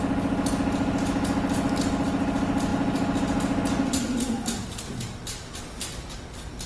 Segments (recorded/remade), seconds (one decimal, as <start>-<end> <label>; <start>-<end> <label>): 0.0-6.7 recorded